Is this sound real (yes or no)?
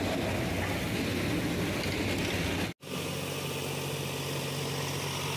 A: yes